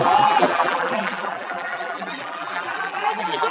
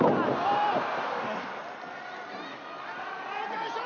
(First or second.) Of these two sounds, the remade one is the first